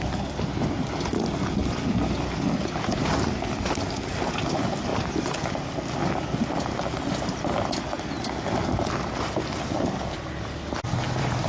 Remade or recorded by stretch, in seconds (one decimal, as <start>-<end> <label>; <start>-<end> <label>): 0.0-11.5 recorded